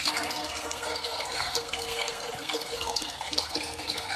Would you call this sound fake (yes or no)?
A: yes